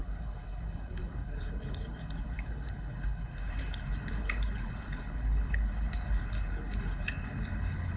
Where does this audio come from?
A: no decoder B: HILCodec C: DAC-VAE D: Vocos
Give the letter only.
B